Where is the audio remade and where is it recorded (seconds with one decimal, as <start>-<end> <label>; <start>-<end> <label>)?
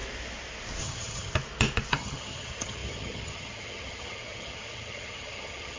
0.0-0.8 recorded; 0.8-1.3 remade; 1.3-1.9 recorded; 1.9-5.8 remade